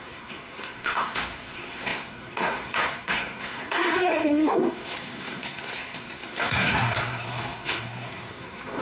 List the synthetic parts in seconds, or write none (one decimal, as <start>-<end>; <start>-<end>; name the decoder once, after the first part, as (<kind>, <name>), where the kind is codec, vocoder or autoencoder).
0.0-8.8 (codec, SNAC)